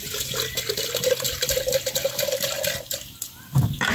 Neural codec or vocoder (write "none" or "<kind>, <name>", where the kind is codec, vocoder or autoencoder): vocoder, BigVGAN v2